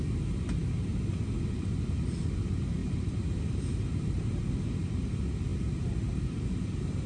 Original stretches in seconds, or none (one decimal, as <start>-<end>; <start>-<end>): 0.0-2.8; 5.1-5.5